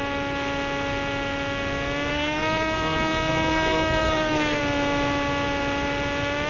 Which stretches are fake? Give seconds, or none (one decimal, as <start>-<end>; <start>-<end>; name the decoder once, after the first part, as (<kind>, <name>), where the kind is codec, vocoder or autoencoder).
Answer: 2.1-4.6 (codec, SNAC)